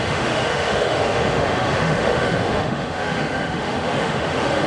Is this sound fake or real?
fake